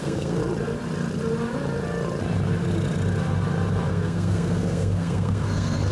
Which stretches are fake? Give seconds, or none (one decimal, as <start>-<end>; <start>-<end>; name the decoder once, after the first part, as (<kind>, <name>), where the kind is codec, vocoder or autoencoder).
0.0-0.4 (codec, SNAC); 3.9-5.9